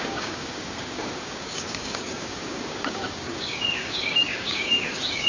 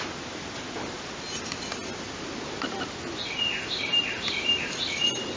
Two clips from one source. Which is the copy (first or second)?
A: first